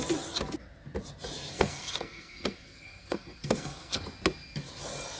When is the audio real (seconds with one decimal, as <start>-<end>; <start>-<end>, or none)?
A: 0.0-1.5; 4.0-5.2